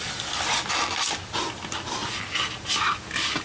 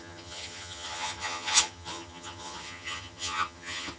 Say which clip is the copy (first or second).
second